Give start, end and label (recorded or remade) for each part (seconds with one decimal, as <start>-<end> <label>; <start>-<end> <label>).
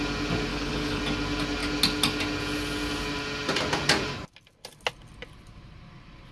0.0-0.5 recorded; 0.5-1.0 remade; 1.0-6.3 recorded